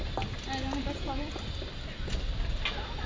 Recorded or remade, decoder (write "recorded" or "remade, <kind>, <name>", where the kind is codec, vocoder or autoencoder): recorded